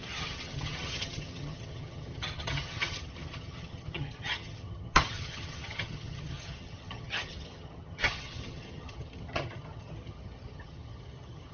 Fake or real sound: fake